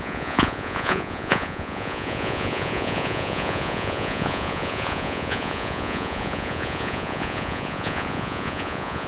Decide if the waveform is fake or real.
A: fake